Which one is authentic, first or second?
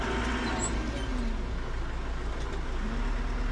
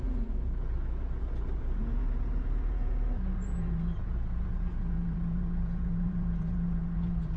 first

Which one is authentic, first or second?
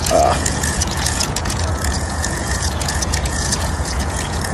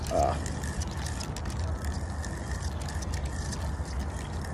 second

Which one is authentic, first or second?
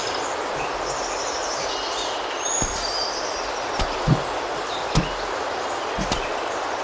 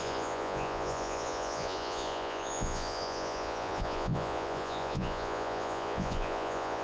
first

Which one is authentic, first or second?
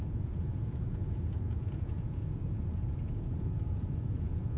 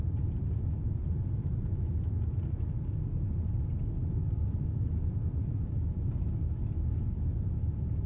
second